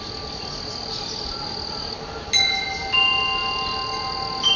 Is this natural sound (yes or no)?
yes